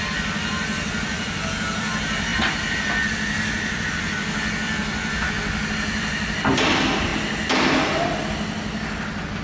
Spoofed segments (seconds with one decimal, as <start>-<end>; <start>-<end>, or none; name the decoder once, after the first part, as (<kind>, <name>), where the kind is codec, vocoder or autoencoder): 0.0-4.8 (vocoder, BigVGAN v2); 6.5-7.1